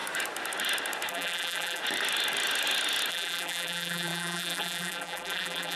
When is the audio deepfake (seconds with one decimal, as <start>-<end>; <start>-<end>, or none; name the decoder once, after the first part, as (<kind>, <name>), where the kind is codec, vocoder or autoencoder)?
1.1-1.8 (vocoder, BigVGAN v2); 3.1-5.8